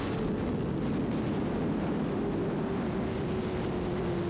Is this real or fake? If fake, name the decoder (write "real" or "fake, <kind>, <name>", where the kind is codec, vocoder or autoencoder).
real